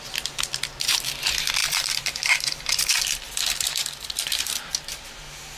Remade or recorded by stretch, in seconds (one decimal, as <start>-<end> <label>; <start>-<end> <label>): 0.0-1.6 recorded; 1.6-4.7 remade; 4.7-5.6 recorded